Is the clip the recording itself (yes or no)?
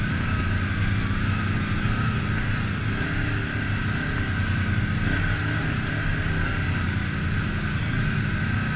yes